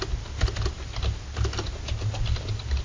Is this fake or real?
real